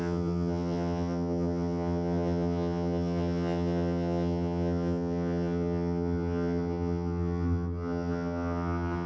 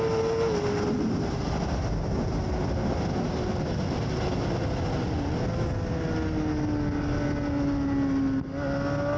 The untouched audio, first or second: second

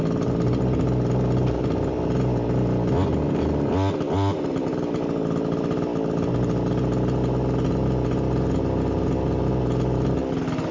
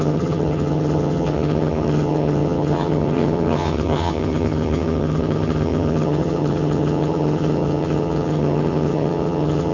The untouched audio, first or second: first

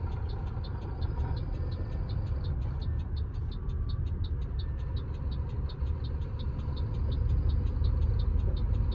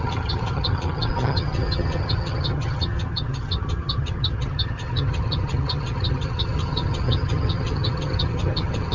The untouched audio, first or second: first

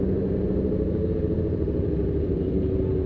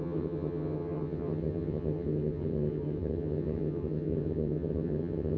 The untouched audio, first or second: first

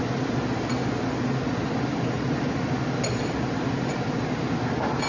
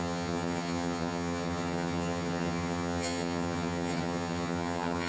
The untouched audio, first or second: first